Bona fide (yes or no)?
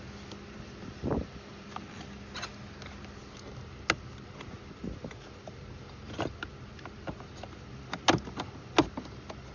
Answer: yes